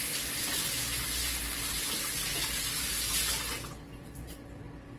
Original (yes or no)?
yes